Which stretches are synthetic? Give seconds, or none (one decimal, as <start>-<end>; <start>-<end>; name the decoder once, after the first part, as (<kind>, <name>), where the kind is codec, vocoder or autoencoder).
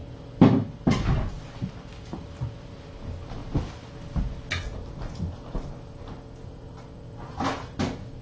0.0-2.9 (vocoder, BigVGAN v2)